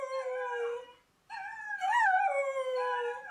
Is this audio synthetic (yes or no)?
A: no